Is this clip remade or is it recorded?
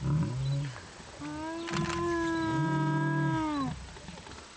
recorded